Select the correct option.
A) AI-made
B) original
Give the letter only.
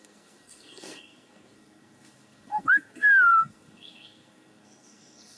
A